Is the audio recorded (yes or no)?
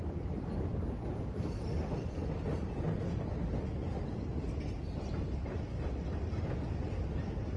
yes